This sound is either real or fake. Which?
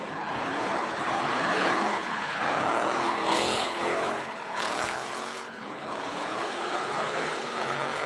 fake